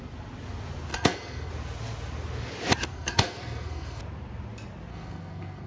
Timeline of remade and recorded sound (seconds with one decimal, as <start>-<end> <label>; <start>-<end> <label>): 0.0-0.9 recorded; 0.9-1.5 remade; 1.5-2.9 recorded; 2.9-4.0 remade; 4.0-4.9 recorded; 4.9-5.7 remade

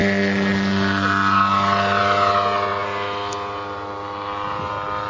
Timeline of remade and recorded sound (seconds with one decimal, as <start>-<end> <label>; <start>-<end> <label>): 0.0-5.1 recorded

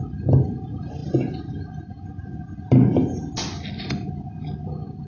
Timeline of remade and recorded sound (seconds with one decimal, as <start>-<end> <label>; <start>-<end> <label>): 0.0-5.1 recorded

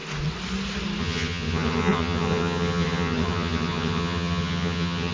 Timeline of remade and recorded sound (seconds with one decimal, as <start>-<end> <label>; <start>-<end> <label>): 0.0-1.0 recorded; 1.0-5.1 remade

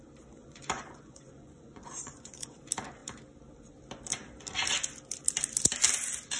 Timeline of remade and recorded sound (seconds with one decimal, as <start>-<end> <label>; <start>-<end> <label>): 0.0-0.4 recorded; 0.4-2.6 remade; 2.6-6.4 recorded

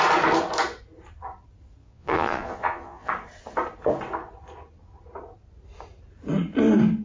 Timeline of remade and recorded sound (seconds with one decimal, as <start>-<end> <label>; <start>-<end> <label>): 0.0-1.8 recorded; 1.8-3.1 remade; 3.1-7.0 recorded

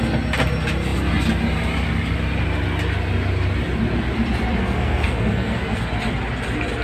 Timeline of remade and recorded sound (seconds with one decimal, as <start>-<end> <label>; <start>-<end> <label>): 0.0-4.6 recorded; 4.6-5.9 remade; 5.9-6.8 recorded

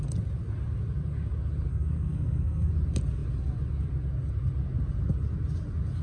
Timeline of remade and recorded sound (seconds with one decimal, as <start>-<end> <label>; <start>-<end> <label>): 0.0-1.7 recorded; 1.7-2.7 remade; 2.7-6.0 recorded